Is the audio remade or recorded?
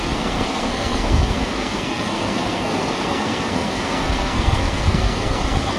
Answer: remade